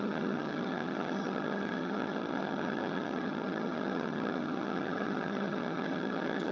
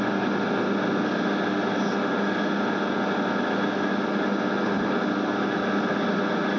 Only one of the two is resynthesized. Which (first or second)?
first